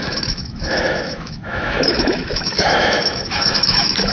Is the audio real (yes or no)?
no